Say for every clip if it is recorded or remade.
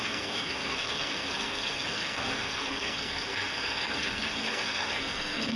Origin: remade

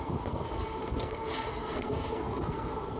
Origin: remade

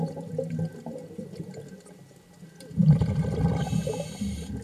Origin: recorded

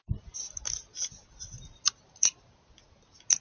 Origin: recorded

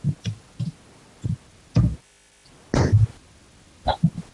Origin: recorded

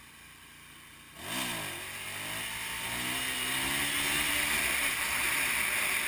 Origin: recorded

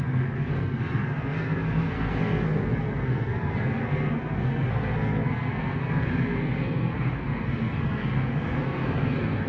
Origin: remade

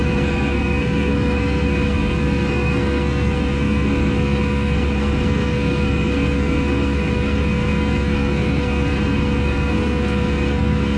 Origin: remade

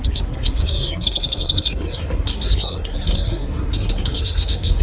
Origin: remade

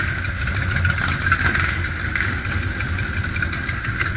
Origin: recorded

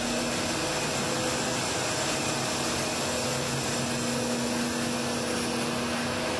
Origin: recorded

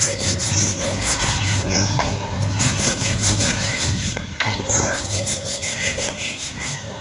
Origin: remade